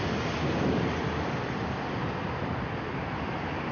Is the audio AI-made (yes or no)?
no